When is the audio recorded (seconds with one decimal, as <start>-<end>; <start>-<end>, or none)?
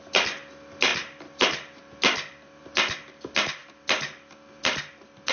0.0-5.3